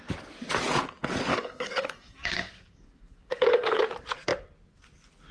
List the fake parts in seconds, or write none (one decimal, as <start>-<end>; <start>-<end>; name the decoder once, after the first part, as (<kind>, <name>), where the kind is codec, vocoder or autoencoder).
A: 1.3-3.8 (codec, DAC)